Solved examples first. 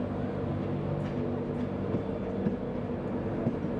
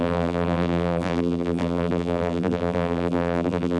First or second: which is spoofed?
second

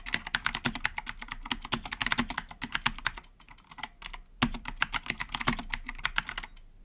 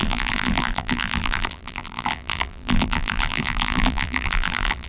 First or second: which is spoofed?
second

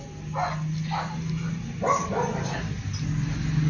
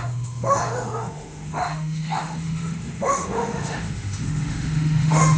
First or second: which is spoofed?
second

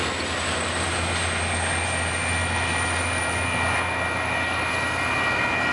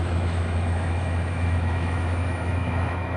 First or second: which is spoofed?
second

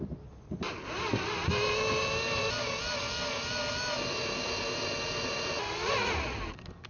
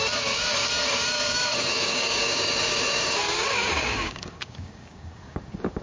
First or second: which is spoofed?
second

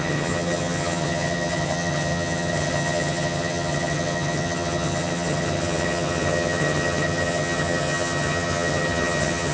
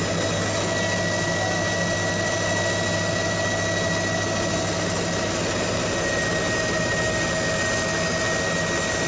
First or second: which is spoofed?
first